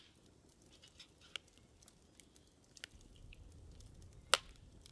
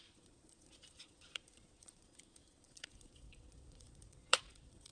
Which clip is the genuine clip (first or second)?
first